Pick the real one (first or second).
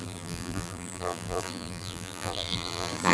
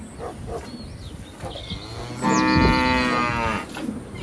second